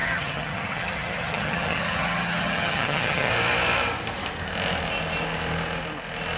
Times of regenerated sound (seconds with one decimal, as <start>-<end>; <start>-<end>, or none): 0.0-3.3